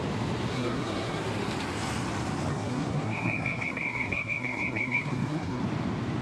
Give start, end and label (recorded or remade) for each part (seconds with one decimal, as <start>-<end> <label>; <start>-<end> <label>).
0.0-0.5 recorded; 0.5-1.2 remade; 1.2-2.5 recorded; 2.5-5.6 remade; 5.6-6.2 recorded